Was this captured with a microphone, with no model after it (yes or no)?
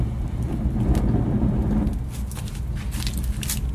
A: yes